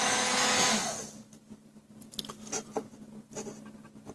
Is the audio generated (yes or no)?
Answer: no